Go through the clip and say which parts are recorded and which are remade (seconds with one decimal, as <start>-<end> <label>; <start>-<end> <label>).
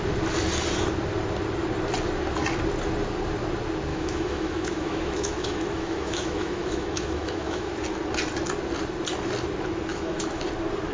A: 0.0-3.9 recorded; 3.9-7.7 remade; 7.7-9.9 recorded; 9.9-10.4 remade; 10.4-10.9 recorded